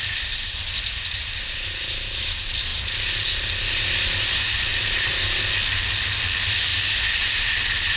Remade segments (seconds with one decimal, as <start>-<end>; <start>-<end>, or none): 4.7-5.4; 6.7-8.0